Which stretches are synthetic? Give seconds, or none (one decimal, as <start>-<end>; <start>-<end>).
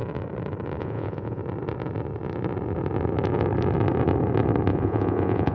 0.8-1.4; 4.7-5.5